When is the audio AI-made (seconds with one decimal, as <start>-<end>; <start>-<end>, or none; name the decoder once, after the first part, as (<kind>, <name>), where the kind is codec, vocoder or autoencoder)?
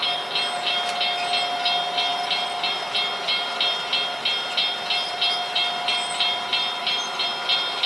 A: 6.6-7.2 (vocoder, BigVGAN v2)